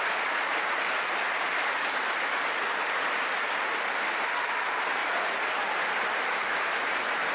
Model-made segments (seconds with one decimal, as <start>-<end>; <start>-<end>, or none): 5.0-7.3